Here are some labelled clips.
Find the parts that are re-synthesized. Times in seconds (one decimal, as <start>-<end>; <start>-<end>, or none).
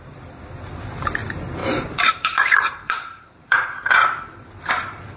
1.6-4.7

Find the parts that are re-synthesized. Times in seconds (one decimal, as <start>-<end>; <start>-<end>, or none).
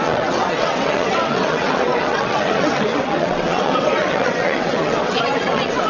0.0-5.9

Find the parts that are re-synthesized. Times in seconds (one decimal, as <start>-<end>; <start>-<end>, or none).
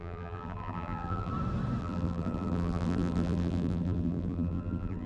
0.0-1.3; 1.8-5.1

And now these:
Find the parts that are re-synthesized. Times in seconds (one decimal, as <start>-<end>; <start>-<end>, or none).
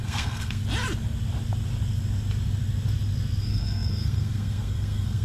0.0-0.6; 3.4-5.2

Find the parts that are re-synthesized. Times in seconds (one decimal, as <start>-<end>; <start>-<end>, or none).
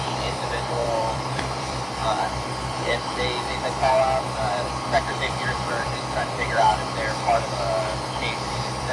0.0-2.0; 5.1-6.7; 8.5-8.9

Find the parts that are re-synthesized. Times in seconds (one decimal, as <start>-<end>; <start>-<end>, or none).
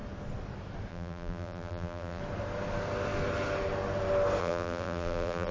0.9-2.2; 4.4-5.5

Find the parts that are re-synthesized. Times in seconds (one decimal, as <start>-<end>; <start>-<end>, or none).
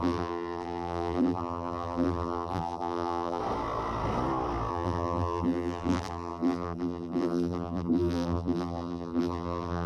0.0-3.4; 4.7-9.9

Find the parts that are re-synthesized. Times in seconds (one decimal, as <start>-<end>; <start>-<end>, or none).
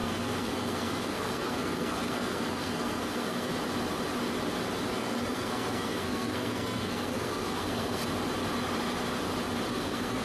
0.0-3.5; 4.9-8.0; 9.7-10.2